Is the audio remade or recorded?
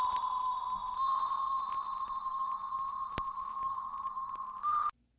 recorded